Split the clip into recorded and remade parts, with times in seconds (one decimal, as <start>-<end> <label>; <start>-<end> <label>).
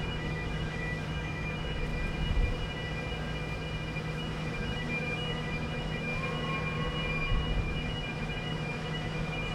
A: 0.0-1.9 remade; 1.9-4.1 recorded; 4.1-6.1 remade; 6.1-7.6 recorded; 7.6-9.5 remade